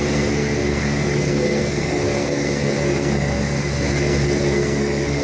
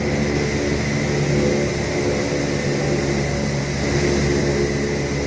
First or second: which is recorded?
second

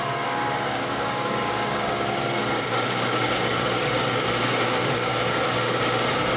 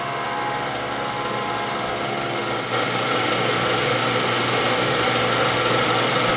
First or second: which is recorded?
second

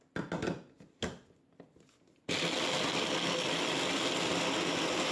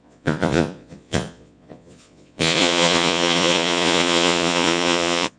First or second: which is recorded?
first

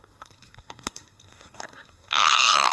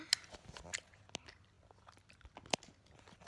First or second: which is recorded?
second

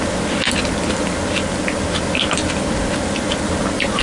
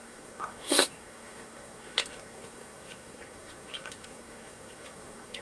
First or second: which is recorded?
first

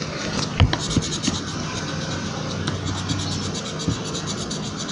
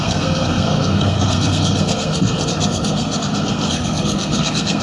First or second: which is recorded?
first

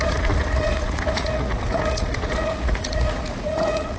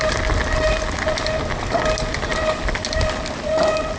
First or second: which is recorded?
second